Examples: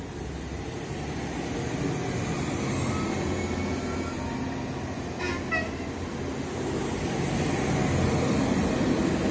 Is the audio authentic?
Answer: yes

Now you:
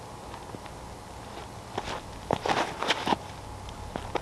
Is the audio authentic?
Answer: yes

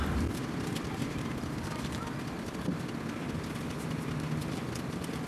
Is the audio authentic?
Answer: yes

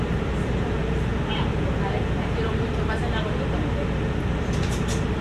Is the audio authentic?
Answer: no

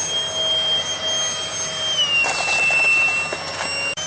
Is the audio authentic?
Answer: yes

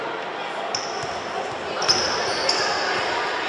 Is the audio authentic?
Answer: yes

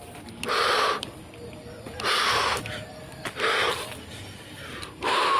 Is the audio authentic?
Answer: yes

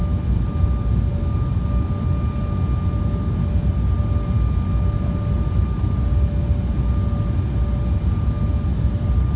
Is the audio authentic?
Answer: yes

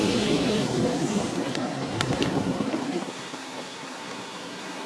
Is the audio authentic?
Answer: no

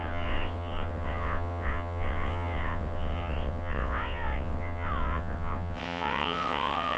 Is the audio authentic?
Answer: no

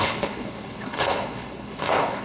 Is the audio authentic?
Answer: no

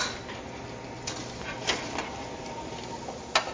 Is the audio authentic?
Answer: yes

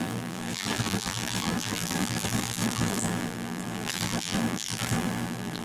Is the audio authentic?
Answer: no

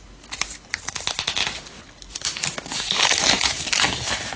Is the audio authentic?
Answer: yes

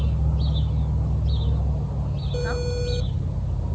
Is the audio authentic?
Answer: yes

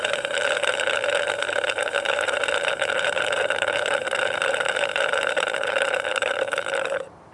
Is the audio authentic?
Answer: no